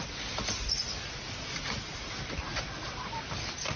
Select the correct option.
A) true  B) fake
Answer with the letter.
A